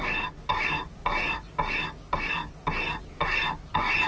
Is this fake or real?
real